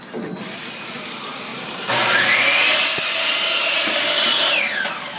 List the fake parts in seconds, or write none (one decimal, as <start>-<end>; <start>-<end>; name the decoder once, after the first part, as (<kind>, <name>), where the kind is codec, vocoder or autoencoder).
1.5-4.6 (vocoder, BigVGAN v2)